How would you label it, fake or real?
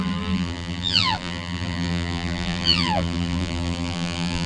fake